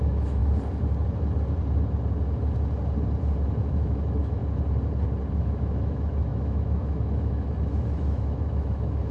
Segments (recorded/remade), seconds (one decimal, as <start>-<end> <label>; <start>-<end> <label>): 0.0-0.4 remade; 0.4-3.6 recorded; 3.6-4.4 remade; 4.4-5.3 recorded; 5.3-9.1 remade